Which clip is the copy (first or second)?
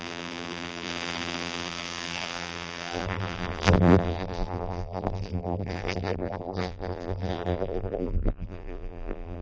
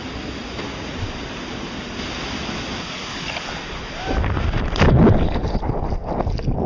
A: first